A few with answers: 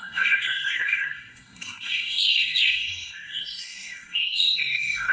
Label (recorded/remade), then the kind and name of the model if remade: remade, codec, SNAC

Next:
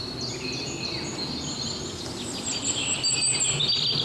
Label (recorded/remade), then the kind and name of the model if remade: recorded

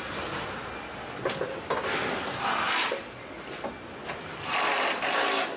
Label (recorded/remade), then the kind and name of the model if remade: recorded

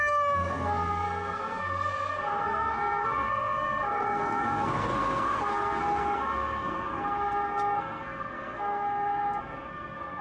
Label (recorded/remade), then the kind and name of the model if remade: remade, codec, SNAC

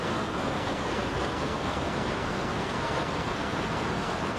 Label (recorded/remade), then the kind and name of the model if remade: remade, codec, SNAC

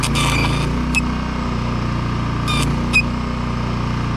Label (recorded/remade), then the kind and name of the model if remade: recorded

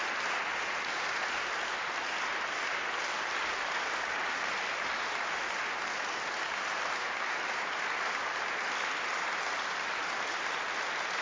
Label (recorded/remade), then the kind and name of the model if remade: recorded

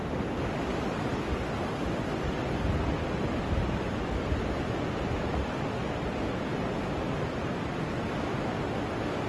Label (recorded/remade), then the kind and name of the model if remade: recorded